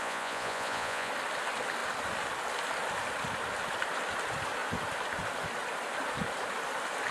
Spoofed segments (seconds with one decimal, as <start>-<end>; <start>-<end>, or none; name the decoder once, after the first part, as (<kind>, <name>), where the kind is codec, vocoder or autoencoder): 0.0-1.1 (vocoder, Vocos)